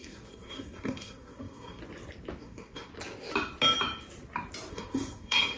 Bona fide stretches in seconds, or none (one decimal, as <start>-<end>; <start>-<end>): 1.8-2.4; 2.9-4.7